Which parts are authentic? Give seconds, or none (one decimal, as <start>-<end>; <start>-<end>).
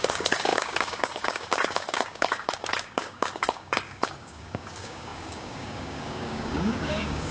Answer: none